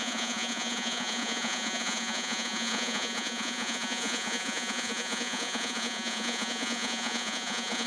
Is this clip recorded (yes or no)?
no